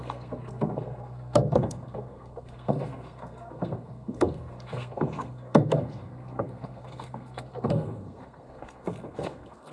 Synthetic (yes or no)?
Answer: yes